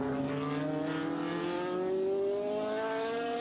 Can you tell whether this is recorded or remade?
recorded